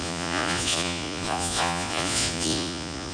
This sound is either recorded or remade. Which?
remade